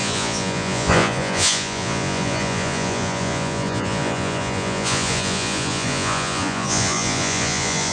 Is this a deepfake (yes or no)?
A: yes